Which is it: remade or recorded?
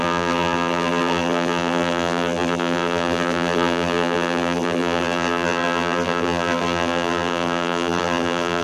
remade